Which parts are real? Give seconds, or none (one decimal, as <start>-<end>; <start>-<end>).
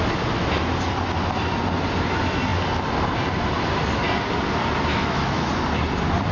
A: 0.0-4.9; 5.5-6.3